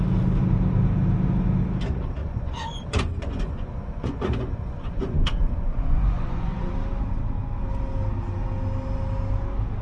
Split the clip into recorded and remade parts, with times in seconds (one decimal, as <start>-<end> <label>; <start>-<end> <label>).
0.0-2.2 recorded; 2.2-6.7 remade; 6.7-9.8 recorded